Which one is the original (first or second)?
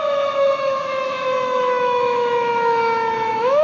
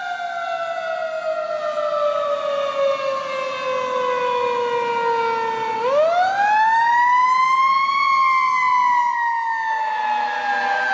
second